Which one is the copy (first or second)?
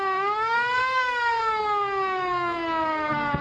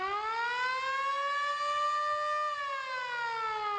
first